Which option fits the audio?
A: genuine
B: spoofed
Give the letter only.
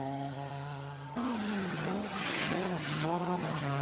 B